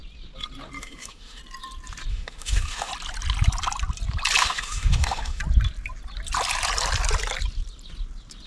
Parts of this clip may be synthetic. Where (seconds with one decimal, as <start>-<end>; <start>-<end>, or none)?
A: 0.8-1.4; 2.1-2.9; 4.4-5.4

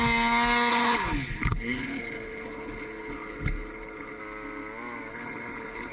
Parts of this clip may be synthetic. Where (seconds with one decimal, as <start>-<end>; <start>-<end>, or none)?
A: 0.7-4.2; 5.1-5.9